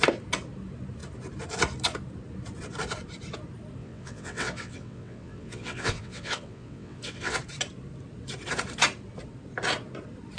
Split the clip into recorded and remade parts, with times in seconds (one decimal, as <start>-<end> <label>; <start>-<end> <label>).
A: 0.0-3.8 recorded; 3.8-7.4 remade; 7.4-10.4 recorded